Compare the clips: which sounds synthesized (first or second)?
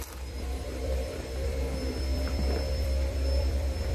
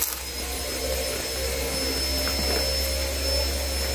first